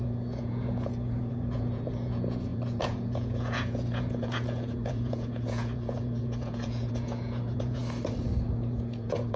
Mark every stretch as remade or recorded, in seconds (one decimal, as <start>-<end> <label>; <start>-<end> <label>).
0.0-7.8 remade; 7.8-8.5 recorded; 8.5-9.4 remade